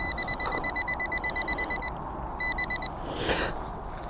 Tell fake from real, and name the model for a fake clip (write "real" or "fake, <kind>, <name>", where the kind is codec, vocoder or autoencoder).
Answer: real